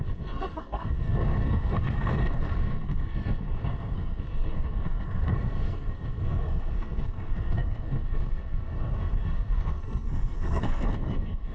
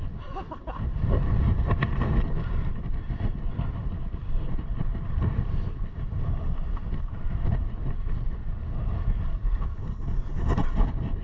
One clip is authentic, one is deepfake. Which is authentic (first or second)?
second